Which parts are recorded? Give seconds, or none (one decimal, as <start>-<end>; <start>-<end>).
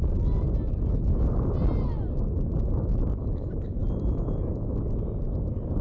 0.0-5.8